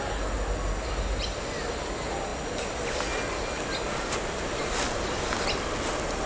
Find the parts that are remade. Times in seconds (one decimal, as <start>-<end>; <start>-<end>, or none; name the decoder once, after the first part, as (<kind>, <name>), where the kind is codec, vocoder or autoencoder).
none